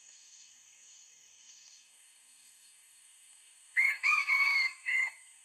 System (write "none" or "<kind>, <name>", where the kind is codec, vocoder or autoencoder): codec, DAC